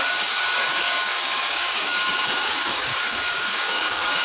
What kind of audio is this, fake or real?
fake